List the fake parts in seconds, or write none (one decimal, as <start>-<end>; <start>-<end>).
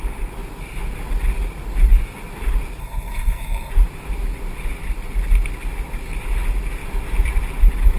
2.8-3.7